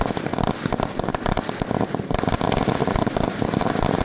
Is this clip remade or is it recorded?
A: recorded